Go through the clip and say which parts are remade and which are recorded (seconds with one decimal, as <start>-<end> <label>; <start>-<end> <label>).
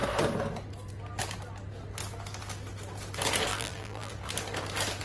0.0-3.5 recorded; 3.5-4.1 remade; 4.1-5.0 recorded